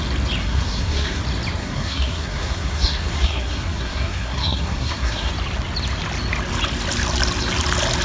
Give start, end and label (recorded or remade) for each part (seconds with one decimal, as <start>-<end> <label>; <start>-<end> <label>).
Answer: 0.0-0.4 recorded; 0.4-1.2 remade; 1.2-1.6 recorded; 1.6-5.3 remade; 5.3-8.0 recorded